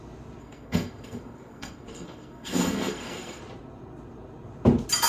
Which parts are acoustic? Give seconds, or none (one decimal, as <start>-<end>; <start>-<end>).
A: 0.0-0.4; 3.4-5.1